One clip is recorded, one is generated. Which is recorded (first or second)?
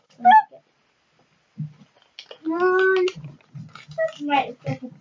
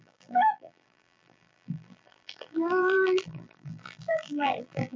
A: first